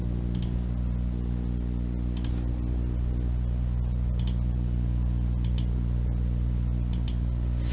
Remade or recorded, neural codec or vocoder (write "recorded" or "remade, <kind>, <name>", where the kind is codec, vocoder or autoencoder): recorded